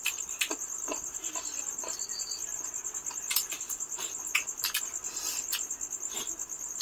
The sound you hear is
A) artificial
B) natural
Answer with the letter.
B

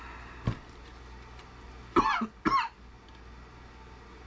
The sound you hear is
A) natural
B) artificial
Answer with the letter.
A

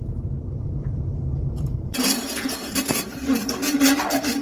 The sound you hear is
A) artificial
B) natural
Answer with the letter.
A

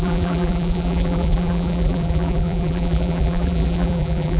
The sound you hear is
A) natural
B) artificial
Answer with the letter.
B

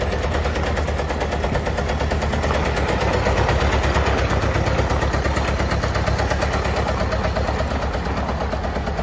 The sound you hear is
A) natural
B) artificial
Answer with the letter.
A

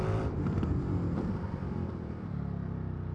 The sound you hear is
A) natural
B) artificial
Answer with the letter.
B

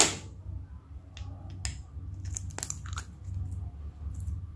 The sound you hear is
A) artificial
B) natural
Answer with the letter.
B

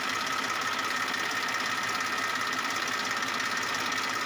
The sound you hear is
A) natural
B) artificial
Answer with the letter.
B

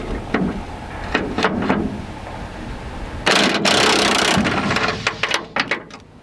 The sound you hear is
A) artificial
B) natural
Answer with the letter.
B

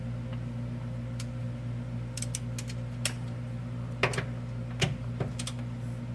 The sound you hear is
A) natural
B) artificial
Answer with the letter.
A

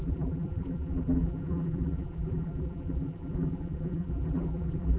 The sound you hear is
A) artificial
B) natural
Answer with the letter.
A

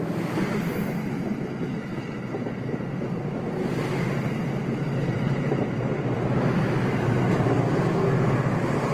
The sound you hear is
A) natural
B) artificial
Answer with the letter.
B